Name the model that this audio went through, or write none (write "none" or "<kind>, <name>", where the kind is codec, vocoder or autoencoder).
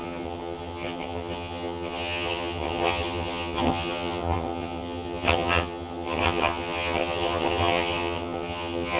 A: vocoder, HiFi-GAN